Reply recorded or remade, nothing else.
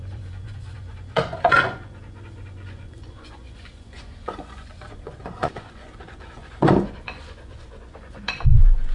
remade